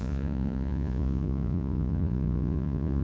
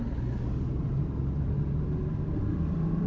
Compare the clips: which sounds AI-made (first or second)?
first